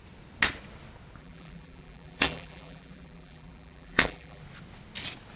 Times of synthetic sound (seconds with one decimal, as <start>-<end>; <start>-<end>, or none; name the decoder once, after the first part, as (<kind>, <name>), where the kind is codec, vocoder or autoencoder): 1.2-4.4 (vocoder, BigVGAN v2)